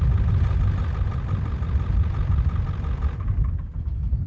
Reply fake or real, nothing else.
real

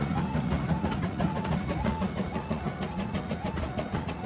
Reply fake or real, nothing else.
fake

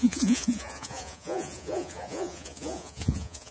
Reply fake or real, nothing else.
fake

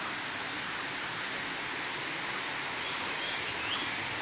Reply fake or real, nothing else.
real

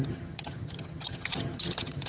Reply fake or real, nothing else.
fake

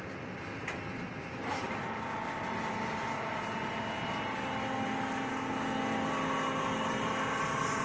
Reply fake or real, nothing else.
real